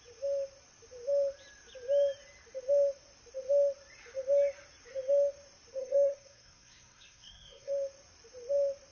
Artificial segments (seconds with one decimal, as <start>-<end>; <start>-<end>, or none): 5.8-7.7